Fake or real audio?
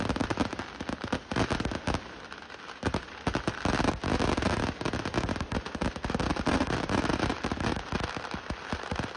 real